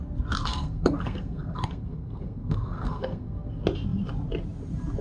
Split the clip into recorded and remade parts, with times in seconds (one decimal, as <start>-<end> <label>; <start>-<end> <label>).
0.0-0.5 recorded; 0.5-3.5 remade; 3.5-5.0 recorded